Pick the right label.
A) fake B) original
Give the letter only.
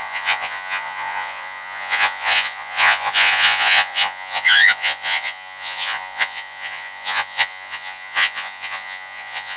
A